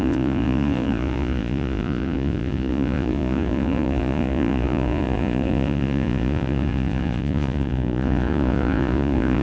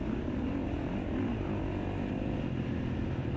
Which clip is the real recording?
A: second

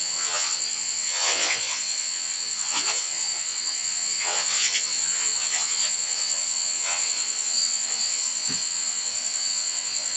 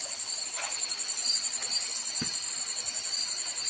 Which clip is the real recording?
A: second